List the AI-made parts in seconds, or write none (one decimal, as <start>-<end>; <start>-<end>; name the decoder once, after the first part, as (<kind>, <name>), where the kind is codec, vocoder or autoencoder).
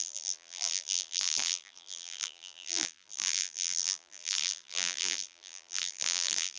0.0-6.6 (vocoder, BigVGAN v2)